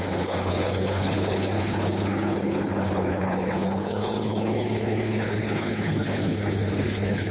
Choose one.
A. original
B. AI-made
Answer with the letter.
B